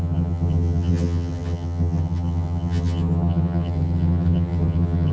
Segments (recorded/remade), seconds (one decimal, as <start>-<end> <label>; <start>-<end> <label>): 0.0-5.1 remade